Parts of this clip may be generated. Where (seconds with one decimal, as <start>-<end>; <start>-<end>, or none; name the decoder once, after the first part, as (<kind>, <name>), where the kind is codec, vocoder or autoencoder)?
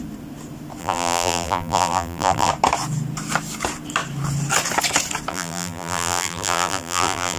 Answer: 0.8-2.5 (vocoder, BigVGAN v2); 5.3-7.4